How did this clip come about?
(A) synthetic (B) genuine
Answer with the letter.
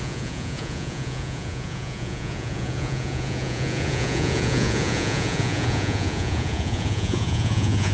A